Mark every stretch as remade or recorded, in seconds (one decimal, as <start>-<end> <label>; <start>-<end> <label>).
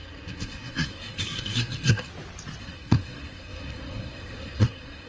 0.0-2.1 remade; 2.1-2.6 recorded; 2.6-5.1 remade